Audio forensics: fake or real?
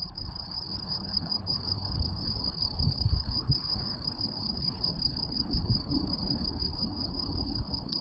fake